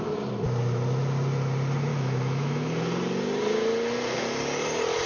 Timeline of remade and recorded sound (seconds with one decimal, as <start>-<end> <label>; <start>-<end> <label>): 0.0-1.9 recorded; 1.9-2.7 remade; 2.7-5.1 recorded